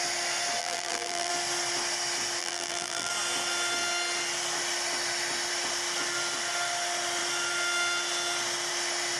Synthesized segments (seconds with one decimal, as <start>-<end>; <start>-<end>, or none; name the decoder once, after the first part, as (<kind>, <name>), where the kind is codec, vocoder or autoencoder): 0.6-1.3 (vocoder, BigVGAN v2); 2.4-3.1